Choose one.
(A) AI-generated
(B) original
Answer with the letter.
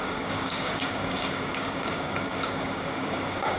A